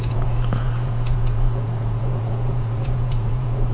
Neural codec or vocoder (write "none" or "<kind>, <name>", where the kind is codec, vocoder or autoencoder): vocoder, Vocos